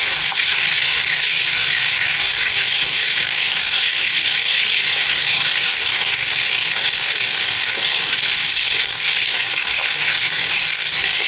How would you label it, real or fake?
fake